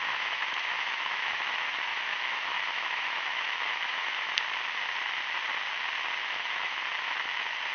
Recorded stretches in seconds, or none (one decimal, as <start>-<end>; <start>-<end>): 1.4-1.9; 4.3-6.2; 6.8-7.7